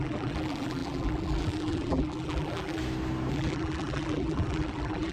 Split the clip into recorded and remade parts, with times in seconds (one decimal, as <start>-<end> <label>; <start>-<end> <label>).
0.0-2.8 remade; 2.8-3.3 recorded; 3.3-5.1 remade